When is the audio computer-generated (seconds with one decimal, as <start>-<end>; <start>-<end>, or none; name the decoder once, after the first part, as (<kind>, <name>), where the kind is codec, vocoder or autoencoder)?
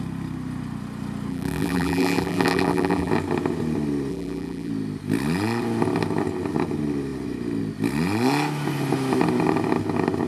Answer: 1.3-3.1 (vocoder, BigVGAN v2); 4.1-4.7